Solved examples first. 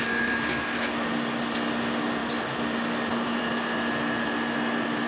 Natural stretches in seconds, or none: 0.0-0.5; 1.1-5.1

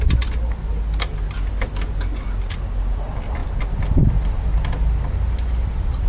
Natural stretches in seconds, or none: 0.0-6.1

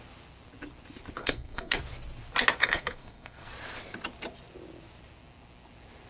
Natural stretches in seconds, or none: 0.0-1.2; 1.8-2.6; 3.5-6.1

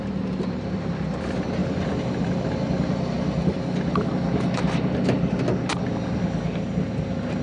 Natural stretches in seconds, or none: 0.0-1.6; 4.1-7.4

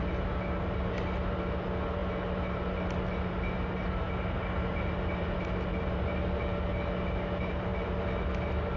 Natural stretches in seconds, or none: 0.0-8.8

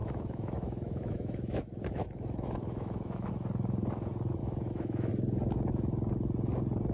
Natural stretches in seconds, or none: 3.3-4.4; 5.1-6.9